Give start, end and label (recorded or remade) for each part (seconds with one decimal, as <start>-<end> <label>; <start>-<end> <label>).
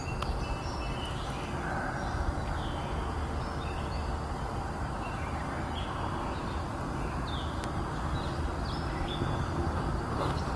0.0-10.6 recorded